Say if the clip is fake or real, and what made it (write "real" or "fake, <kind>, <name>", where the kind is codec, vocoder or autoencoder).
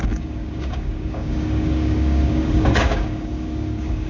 fake, codec, DAC